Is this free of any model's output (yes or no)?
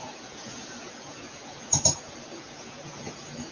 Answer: no